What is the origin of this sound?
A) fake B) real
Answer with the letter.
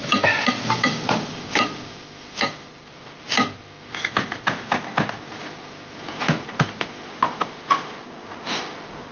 B